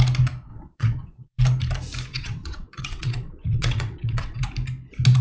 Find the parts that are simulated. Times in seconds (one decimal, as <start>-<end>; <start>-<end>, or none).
0.5-1.4; 2.1-4.4